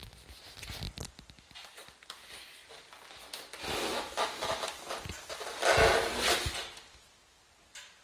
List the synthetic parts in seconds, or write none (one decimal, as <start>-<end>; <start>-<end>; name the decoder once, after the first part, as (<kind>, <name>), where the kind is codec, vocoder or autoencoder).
1.0-2.0 (vocoder, BigVGAN v2)